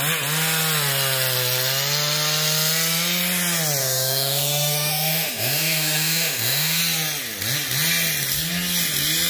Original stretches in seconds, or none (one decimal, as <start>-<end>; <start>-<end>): 0.0-3.8; 6.8-9.3